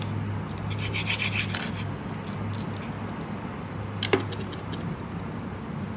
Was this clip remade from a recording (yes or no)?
no